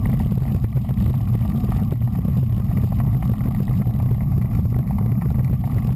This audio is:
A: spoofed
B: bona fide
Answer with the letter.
A